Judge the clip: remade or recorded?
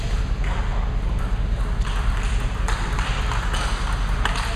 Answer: recorded